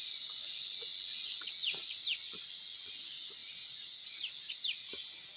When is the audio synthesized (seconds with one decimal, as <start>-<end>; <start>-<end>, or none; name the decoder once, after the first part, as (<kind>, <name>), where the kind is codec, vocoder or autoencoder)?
none